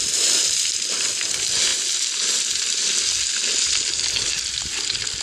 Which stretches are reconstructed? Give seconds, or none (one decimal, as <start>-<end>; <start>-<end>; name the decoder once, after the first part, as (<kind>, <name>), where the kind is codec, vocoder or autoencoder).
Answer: none